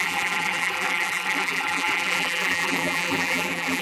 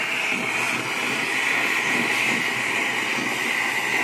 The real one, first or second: second